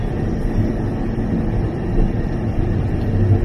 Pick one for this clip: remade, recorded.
recorded